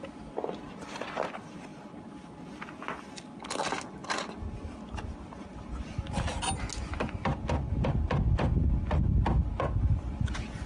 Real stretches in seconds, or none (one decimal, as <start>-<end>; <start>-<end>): 0.0-10.7